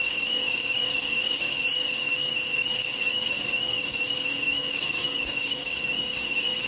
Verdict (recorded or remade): remade